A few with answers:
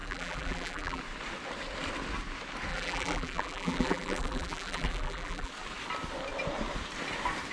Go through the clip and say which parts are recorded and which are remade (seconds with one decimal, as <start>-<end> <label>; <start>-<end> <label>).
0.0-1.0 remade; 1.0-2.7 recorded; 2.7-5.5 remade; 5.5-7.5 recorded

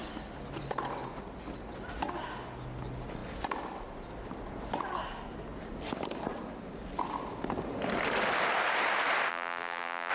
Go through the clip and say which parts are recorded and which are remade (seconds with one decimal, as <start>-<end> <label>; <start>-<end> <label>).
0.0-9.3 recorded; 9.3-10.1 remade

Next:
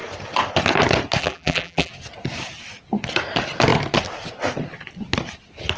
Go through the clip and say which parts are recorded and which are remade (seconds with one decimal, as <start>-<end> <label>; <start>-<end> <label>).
0.0-1.2 recorded; 1.2-1.9 remade; 1.9-5.8 recorded

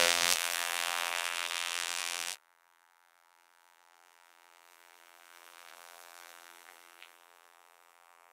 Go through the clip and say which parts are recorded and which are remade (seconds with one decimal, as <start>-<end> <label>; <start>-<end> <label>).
0.0-8.3 remade